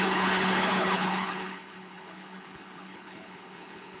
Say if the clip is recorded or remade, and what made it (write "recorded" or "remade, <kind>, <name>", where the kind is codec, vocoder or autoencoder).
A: remade, codec, HILCodec